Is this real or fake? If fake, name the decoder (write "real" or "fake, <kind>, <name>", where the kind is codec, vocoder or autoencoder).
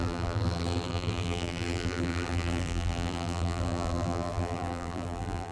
fake, vocoder, BigVGAN v2